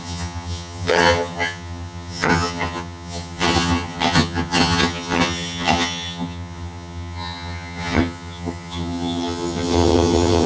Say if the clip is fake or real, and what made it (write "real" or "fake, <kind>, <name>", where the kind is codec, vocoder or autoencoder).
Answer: fake, vocoder, HiFi-GAN